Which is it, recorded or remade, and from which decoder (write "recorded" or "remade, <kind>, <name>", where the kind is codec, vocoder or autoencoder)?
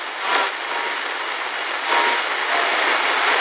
recorded